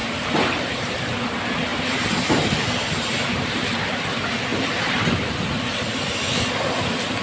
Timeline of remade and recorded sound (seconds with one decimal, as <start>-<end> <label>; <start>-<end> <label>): 0.0-1.2 remade; 1.2-1.7 recorded; 1.7-4.0 remade; 4.0-4.5 recorded; 4.5-5.0 remade; 5.0-7.2 recorded